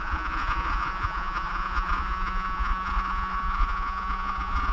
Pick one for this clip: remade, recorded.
remade